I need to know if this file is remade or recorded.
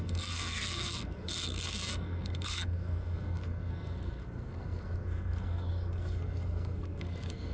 remade